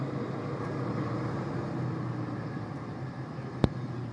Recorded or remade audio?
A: recorded